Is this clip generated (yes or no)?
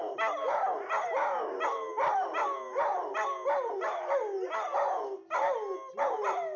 no